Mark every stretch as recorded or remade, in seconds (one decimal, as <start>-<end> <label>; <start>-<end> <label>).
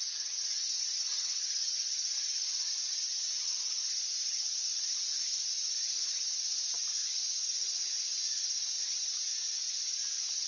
0.0-3.1 recorded; 3.1-3.6 remade; 3.6-9.3 recorded; 9.3-10.5 remade